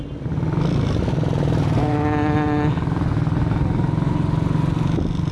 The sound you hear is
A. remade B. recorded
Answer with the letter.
B